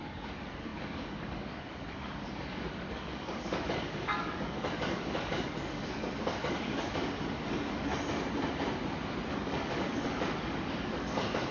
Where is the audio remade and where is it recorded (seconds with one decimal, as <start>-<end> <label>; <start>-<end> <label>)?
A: 0.0-7.0 remade; 7.0-7.5 recorded; 7.5-7.9 remade; 7.9-9.3 recorded; 9.3-11.5 remade